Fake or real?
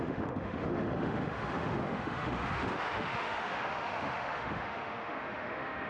fake